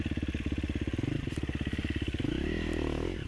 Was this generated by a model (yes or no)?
no